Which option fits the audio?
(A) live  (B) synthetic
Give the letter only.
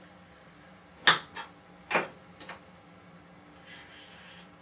A